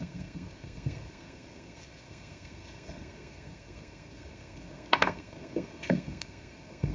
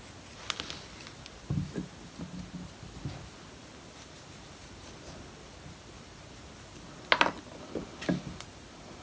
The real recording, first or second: second